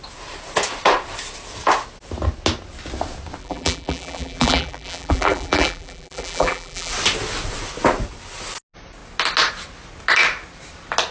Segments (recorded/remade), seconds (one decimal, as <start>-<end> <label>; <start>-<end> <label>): 0.0-3.4 recorded; 3.4-6.9 remade; 6.9-11.1 recorded